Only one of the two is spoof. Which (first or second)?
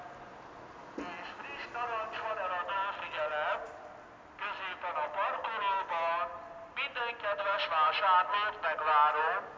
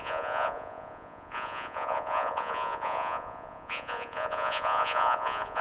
second